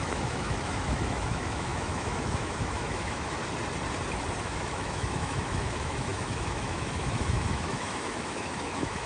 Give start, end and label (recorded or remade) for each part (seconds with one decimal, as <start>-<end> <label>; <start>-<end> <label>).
0.0-3.4 remade; 3.4-4.4 recorded; 4.4-9.1 remade